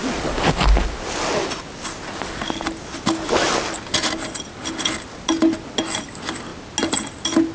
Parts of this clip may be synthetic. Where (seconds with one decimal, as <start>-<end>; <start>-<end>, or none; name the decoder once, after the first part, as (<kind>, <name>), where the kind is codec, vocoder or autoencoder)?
none